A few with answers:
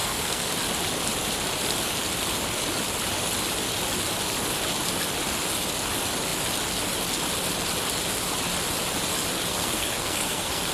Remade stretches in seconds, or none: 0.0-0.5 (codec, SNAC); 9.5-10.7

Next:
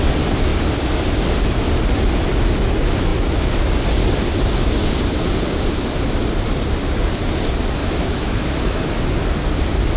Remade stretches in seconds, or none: 7.8-8.9 (autoencoder, DAC-VAE)

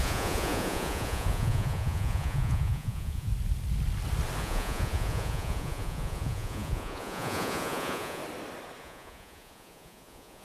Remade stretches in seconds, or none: 0.0-3.3 (vocoder, Vocos); 4.4-8.2; 8.8-10.4

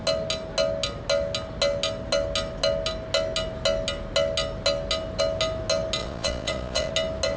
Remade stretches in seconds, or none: 6.0-6.9 (vocoder, Vocos)

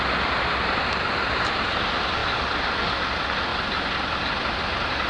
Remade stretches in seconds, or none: none

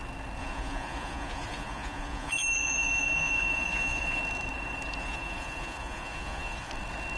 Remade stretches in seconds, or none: 0.4-4.2 (vocoder, Vocos); 5.0-6.7

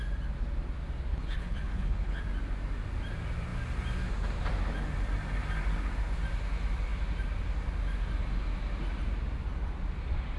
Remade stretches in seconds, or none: 1.1-2.2 (codec, HILCodec)

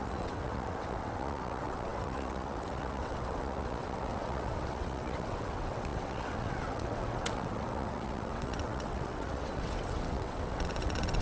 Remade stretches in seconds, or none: 0.0-11.2 (vocoder, WaveNeXt)